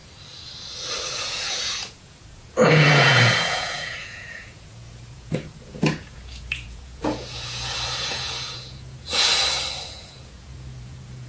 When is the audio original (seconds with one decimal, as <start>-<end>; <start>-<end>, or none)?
0.0-1.1; 9.3-9.9